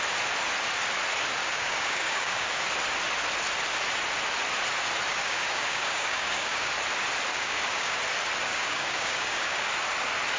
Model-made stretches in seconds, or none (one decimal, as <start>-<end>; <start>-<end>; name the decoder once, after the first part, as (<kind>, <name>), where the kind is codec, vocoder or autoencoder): 1.4-2.6 (codec, DAC); 5.1-6.7; 7.3-8.0; 8.5-9.7